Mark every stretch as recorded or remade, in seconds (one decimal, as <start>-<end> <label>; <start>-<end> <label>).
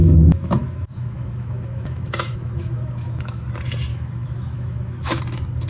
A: 0.0-3.4 remade; 3.4-3.9 recorded; 3.9-5.2 remade; 5.2-5.7 recorded